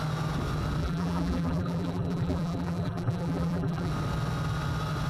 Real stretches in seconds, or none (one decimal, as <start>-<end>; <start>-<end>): 0.0-0.8; 3.9-5.1